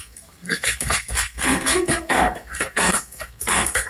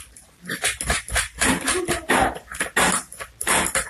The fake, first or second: first